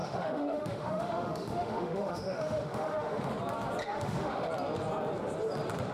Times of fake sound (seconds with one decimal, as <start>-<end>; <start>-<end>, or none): 0.0-3.3; 3.8-4.5